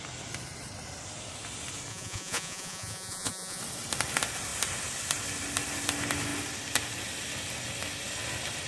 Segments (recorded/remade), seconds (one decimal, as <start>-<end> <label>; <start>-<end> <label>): 0.0-1.9 recorded; 1.9-3.6 remade; 3.6-8.7 recorded